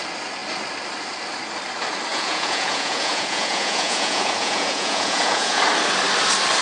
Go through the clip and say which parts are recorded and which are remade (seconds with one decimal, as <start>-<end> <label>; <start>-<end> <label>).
0.0-2.1 recorded; 2.1-5.6 remade; 5.6-6.6 recorded